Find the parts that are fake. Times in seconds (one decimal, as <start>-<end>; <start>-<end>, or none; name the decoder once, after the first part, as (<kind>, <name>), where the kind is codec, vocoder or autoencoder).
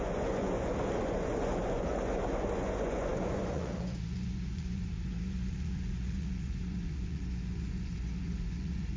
0.0-9.0 (vocoder, Vocos)